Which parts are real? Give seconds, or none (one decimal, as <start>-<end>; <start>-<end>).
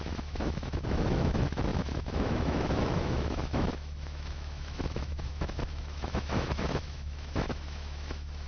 none